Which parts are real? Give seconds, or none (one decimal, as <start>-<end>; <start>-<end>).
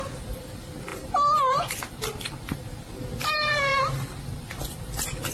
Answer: 0.0-5.3